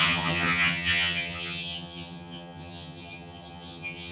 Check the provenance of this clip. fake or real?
fake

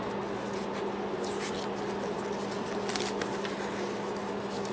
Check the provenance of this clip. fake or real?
real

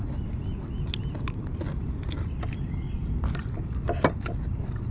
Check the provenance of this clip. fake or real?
real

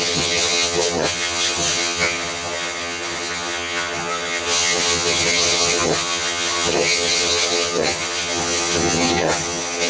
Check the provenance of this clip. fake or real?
fake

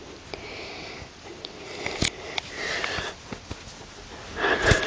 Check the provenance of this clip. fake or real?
real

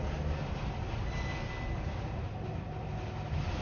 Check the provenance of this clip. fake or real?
real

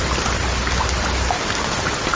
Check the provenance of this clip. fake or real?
real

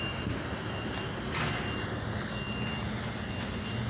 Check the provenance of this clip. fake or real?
real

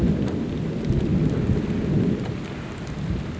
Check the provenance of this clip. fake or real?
real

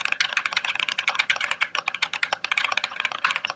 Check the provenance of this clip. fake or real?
fake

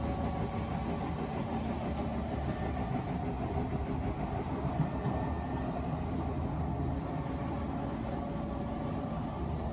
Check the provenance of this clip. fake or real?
real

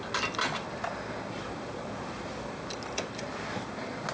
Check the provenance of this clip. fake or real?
real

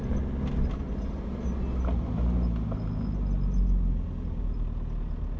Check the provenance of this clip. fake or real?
real